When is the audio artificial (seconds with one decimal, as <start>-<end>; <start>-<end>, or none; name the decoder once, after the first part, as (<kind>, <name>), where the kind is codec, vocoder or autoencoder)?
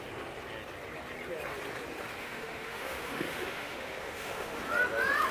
2.2-4.6 (autoencoder, DAC-VAE)